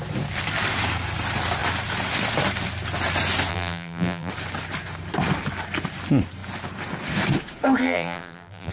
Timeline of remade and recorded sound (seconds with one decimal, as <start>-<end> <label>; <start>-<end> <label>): 0.0-3.5 recorded; 3.5-4.3 remade; 4.3-7.8 recorded; 7.8-8.7 remade